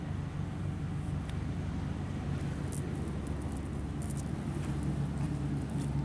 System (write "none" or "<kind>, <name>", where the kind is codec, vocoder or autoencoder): none